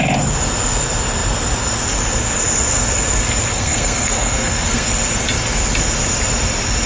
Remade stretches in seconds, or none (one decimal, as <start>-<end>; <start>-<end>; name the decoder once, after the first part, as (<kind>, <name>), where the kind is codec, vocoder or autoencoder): 3.5-4.9 (codec, SNAC)